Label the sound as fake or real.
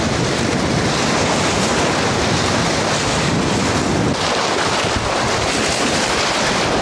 real